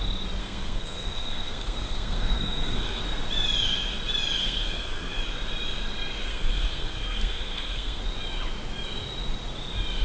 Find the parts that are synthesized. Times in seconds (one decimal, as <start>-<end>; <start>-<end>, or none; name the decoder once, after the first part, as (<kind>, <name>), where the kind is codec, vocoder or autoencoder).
0.4-3.0 (codec, SNAC); 4.4-5.2; 6.3-8.0